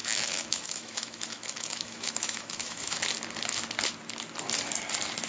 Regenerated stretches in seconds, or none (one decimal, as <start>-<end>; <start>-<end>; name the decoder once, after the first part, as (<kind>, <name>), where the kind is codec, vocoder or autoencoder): 0.0-3.0 (autoencoder, DAC-VAE)